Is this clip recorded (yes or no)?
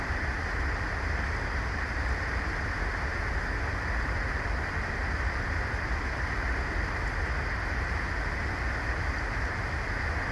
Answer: yes